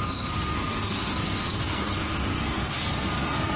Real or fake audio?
fake